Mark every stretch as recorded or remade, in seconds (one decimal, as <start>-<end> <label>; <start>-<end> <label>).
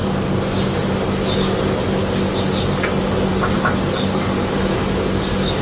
0.0-5.6 recorded